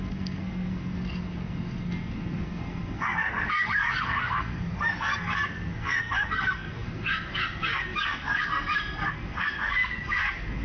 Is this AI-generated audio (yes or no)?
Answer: yes